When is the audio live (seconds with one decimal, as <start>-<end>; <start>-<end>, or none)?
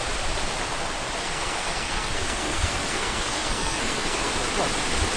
0.0-1.2; 4.3-5.2